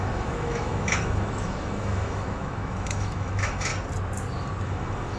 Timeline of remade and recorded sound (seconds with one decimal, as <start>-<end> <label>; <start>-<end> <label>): 0.0-3.7 remade; 3.7-4.6 recorded; 4.6-5.2 remade

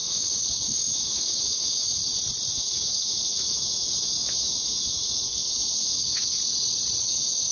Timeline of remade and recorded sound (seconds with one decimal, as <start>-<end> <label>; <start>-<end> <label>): 0.0-2.0 remade; 2.0-2.5 recorded; 2.5-6.4 remade; 6.4-7.0 recorded; 7.0-7.5 remade

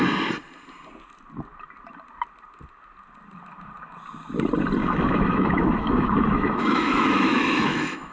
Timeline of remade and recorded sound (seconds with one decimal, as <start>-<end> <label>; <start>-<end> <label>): 0.0-4.8 recorded; 4.8-8.1 remade

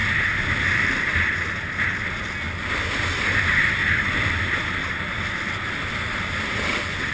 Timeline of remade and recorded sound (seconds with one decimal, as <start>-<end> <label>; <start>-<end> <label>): 0.0-7.1 recorded

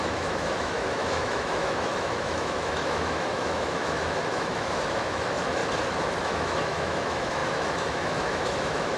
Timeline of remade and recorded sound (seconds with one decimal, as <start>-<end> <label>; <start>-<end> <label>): 0.0-5.6 remade; 5.6-6.2 recorded; 6.2-9.0 remade

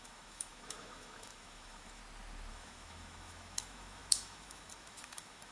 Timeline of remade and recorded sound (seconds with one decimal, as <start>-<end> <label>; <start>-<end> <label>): 0.0-2.0 remade; 2.0-2.5 recorded; 2.5-5.5 remade